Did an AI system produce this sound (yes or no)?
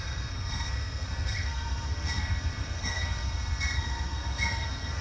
yes